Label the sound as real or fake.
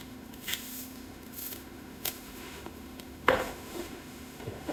fake